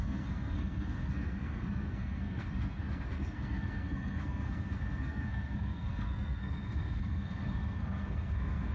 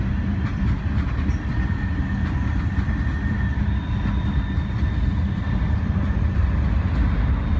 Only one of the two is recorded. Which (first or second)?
second